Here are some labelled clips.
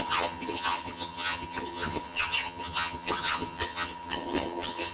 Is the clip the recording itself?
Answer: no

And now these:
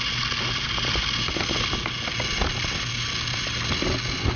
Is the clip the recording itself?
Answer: yes